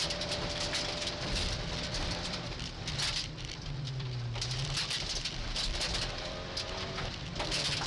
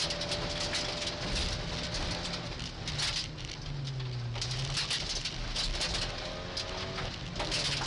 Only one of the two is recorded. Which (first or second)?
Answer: second